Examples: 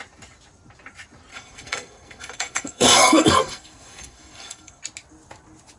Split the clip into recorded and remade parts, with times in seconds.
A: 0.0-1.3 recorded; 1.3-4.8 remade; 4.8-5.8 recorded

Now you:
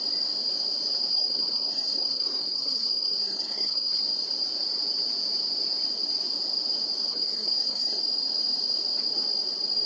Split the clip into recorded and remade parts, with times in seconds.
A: 0.0-1.1 recorded; 1.1-4.0 remade; 4.0-7.1 recorded; 7.1-8.0 remade; 8.0-9.9 recorded

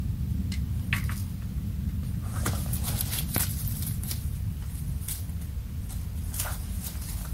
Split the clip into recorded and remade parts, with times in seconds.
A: 0.0-7.3 recorded

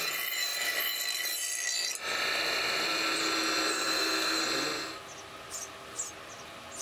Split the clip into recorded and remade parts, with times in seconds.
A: 0.0-3.7 recorded; 3.7-4.4 remade; 4.4-6.8 recorded

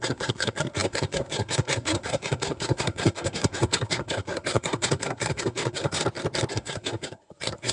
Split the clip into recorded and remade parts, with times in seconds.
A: 0.0-6.0 remade; 6.0-6.5 recorded; 6.5-7.7 remade